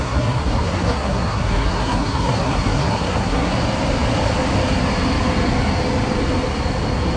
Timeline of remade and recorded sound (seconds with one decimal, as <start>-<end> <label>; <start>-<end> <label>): 0.0-3.5 remade; 3.5-7.2 recorded

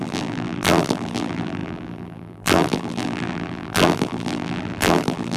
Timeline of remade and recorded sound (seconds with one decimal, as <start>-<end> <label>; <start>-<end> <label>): 0.0-5.4 remade

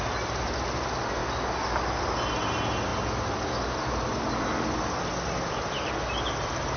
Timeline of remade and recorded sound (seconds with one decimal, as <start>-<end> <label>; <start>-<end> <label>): 0.0-6.8 recorded

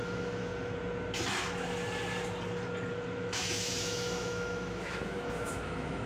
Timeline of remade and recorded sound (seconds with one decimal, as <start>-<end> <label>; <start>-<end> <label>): 0.0-0.5 remade; 0.5-2.9 recorded; 2.9-6.1 remade

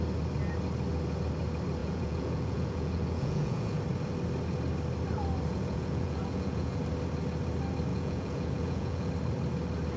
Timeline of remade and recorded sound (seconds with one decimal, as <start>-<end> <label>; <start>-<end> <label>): 0.0-1.8 recorded; 1.8-3.8 remade; 3.8-5.5 recorded; 5.5-6.8 remade; 6.8-7.9 recorded; 7.9-9.1 remade; 9.1-10.0 recorded

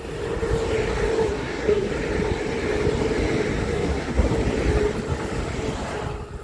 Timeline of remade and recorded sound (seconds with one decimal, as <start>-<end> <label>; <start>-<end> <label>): 0.0-1.3 recorded; 1.3-1.9 remade; 1.9-3.6 recorded; 3.6-4.3 remade; 4.3-6.4 recorded

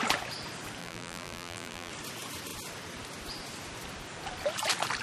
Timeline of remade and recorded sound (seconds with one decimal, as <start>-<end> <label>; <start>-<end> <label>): 0.0-0.8 recorded; 0.8-1.9 remade; 1.9-5.0 recorded

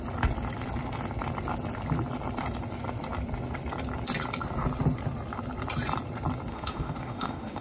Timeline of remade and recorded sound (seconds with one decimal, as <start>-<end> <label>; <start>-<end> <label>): 0.0-6.5 recorded; 6.5-7.6 remade